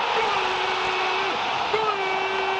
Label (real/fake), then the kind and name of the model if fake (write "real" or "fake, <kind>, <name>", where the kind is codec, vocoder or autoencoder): real